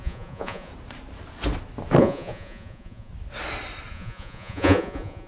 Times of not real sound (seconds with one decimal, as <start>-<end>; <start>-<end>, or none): 0.0-0.7; 2.0-3.1; 3.9-5.3